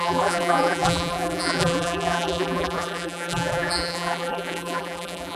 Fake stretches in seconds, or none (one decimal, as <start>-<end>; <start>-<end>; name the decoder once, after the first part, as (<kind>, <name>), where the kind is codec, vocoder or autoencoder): 0.0-5.4 (vocoder, BigVGAN v2)